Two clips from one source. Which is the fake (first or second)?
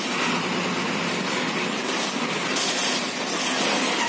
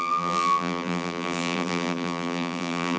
second